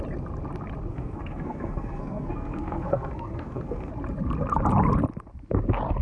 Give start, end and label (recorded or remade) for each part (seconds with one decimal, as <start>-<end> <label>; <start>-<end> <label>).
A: 0.0-0.9 recorded; 0.9-3.9 remade; 3.9-6.0 recorded